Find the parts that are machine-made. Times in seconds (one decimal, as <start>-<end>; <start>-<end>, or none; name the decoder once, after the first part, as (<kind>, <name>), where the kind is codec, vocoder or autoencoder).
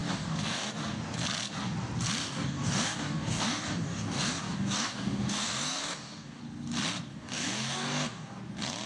0.0-0.7 (codec, DAC); 2.2-6.4; 7.1-8.4